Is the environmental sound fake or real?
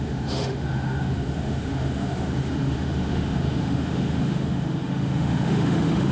fake